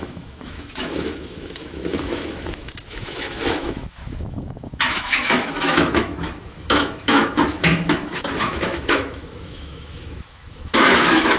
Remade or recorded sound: remade